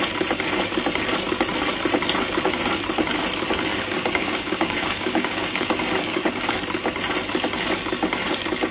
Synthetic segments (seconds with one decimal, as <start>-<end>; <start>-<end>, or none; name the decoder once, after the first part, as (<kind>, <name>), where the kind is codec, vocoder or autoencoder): 3.7-6.6 (codec, DAC)